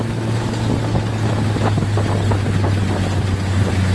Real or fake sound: real